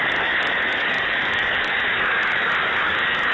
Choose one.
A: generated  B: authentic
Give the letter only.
A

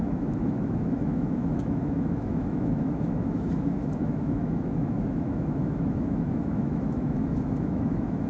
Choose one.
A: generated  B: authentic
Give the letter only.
A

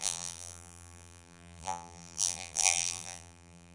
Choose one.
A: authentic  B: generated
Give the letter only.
B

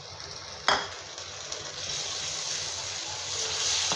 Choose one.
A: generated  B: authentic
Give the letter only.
B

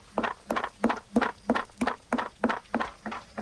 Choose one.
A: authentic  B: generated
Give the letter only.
A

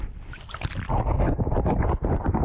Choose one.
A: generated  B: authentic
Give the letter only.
B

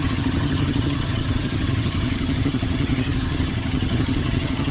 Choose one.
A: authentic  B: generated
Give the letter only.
B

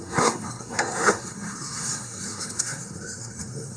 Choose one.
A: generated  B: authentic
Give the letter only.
A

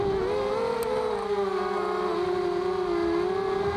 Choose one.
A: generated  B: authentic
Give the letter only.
B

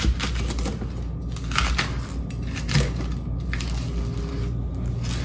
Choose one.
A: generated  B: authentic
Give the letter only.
B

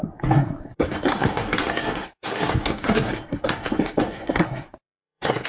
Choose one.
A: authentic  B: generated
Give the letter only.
B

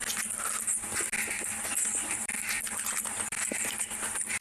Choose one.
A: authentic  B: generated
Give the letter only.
A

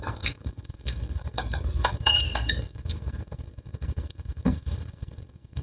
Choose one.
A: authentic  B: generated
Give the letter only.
B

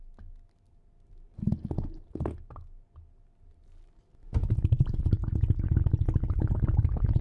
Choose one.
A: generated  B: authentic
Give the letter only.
B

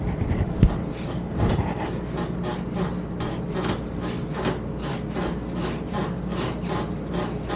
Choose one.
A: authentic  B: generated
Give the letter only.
B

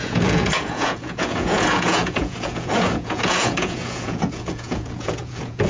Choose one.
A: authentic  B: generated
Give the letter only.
B